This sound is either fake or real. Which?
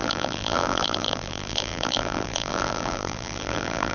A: fake